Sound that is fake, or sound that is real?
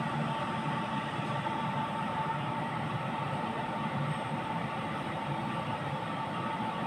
fake